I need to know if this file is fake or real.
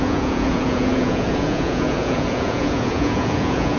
fake